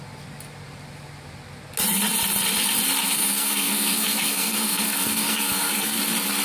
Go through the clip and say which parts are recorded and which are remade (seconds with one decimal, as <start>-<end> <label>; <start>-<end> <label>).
0.0-3.0 recorded; 3.0-6.0 remade; 6.0-6.4 recorded

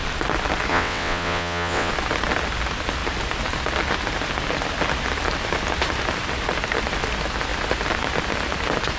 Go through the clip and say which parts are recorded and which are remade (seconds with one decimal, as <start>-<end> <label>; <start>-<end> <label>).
0.0-0.7 recorded; 0.7-1.9 remade; 1.9-9.0 recorded

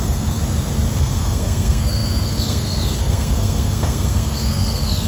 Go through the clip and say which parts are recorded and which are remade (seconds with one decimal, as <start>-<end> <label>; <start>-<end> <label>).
0.0-0.4 remade; 0.4-1.0 recorded; 1.0-5.1 remade

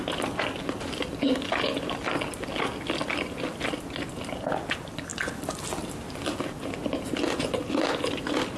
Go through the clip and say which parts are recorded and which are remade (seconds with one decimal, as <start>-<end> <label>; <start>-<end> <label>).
0.0-8.6 recorded

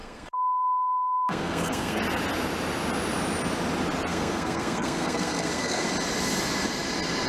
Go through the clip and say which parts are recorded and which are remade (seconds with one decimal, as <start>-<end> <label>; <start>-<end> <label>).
0.0-2.0 remade; 2.0-4.1 recorded; 4.1-5.9 remade; 5.9-7.3 recorded

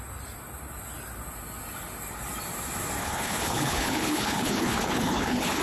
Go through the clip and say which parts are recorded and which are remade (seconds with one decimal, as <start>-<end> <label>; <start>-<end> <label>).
0.0-3.0 recorded; 3.0-5.6 remade

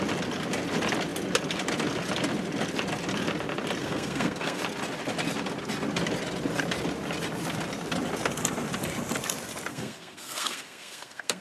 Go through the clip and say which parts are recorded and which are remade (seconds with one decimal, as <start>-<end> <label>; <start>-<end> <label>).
0.0-3.8 recorded; 3.8-4.6 remade; 4.6-9.7 recorded; 9.7-11.4 remade

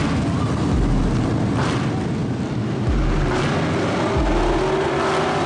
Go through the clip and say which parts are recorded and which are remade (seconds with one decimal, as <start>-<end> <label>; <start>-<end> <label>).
0.0-5.5 recorded